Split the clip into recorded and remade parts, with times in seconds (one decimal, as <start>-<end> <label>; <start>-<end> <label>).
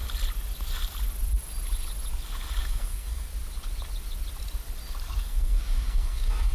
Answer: 0.0-2.6 recorded; 2.6-3.3 remade; 3.3-5.2 recorded; 5.2-6.5 remade